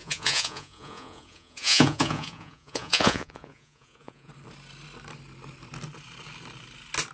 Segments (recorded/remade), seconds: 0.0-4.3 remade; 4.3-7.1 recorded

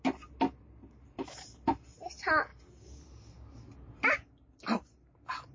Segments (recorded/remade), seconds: 0.0-5.5 recorded

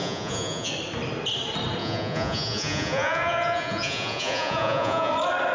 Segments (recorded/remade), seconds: 0.0-0.7 remade; 0.7-1.8 recorded; 1.8-5.1 remade; 5.1-5.5 recorded

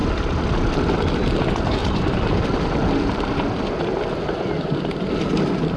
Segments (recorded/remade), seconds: 0.0-5.8 recorded